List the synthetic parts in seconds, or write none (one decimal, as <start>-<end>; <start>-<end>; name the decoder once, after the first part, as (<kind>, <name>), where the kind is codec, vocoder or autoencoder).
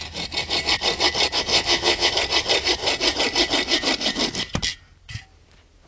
1.5-2.1 (vocoder, Vocos)